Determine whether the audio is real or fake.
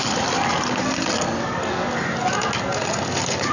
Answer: real